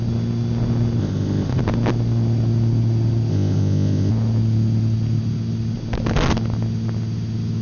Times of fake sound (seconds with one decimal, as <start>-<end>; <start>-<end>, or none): 1.0-1.6; 3.3-4.1